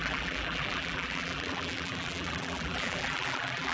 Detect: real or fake fake